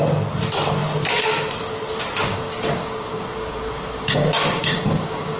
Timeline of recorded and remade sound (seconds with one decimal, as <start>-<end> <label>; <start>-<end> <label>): 0.0-2.3 recorded; 2.3-5.4 remade